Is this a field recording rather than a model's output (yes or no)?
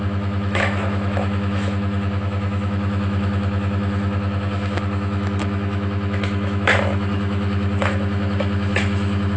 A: no